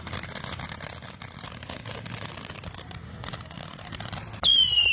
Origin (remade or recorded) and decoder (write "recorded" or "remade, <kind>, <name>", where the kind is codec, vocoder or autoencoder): recorded